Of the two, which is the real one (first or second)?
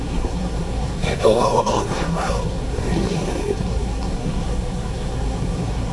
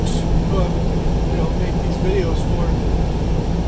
second